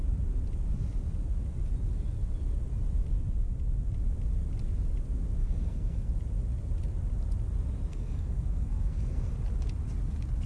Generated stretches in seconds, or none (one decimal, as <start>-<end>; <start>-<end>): 5.4-6.1; 7.9-9.3